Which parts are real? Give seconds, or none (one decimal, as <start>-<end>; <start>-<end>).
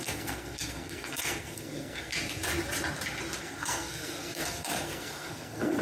2.1-3.4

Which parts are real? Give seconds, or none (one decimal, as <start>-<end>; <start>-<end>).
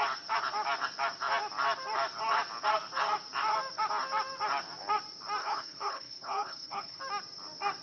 0.0-5.4; 7.0-7.8